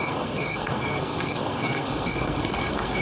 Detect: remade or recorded remade